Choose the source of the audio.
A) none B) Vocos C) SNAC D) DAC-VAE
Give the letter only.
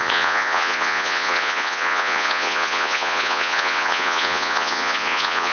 B